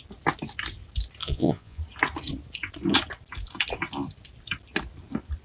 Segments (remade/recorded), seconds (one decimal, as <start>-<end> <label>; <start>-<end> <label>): 0.0-1.2 recorded; 1.2-1.8 remade; 1.8-5.4 recorded